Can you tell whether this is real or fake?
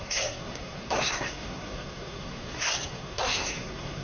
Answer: fake